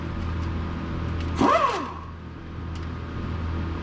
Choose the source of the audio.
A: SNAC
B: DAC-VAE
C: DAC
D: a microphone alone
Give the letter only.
D